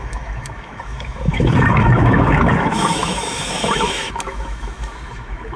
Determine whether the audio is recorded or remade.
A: remade